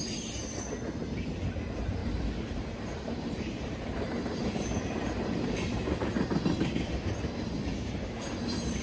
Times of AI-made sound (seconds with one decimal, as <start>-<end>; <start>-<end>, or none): 2.0-6.9; 7.7-8.8